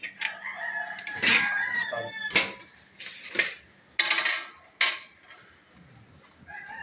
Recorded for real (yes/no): yes